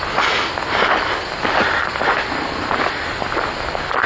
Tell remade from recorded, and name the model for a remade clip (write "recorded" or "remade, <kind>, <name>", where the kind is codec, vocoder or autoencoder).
recorded